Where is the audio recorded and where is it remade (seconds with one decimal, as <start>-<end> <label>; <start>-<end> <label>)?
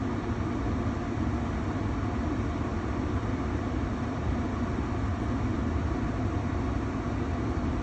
0.0-7.8 recorded